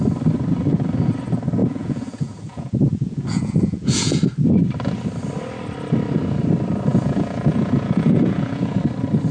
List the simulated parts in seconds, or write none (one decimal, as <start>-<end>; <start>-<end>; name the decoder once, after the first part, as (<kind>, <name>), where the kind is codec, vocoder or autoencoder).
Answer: 1.6-4.2 (vocoder, Vocos); 6.9-8.8